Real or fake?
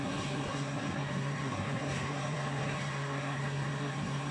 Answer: fake